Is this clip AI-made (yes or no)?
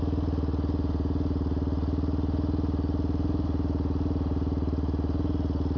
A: no